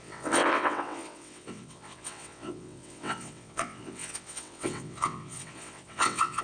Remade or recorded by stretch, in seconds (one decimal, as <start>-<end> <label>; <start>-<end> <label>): 0.0-6.4 remade